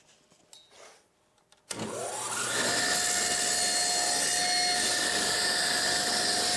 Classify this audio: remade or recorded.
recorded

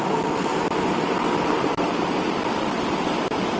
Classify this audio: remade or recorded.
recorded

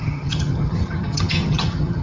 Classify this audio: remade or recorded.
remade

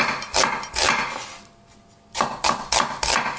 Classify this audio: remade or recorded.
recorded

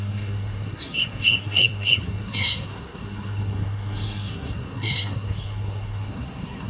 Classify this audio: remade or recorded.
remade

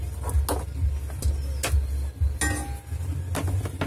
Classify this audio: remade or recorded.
recorded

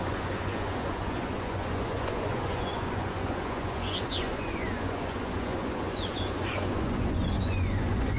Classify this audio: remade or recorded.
remade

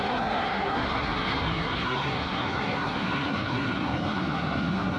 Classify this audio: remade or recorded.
remade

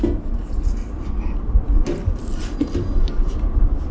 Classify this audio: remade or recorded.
recorded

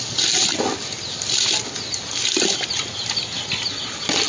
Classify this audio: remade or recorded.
recorded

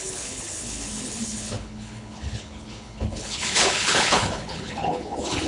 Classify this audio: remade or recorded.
remade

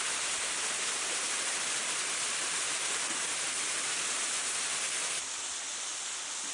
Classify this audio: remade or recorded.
recorded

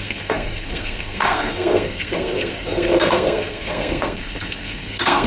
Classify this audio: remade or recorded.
remade